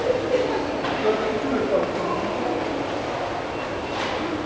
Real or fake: real